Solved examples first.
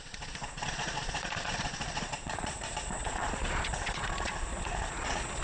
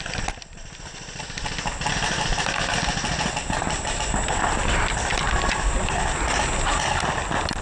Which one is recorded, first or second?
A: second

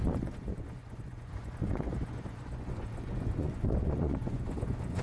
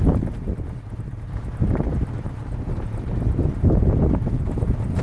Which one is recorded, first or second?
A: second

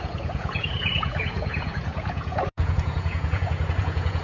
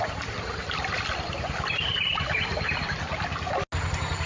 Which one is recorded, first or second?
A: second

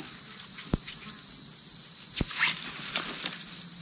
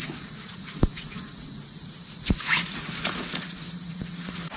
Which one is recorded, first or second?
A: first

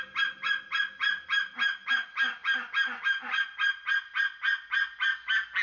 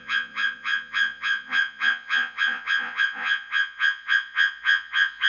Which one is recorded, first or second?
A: first